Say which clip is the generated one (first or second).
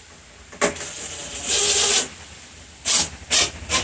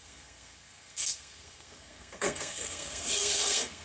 second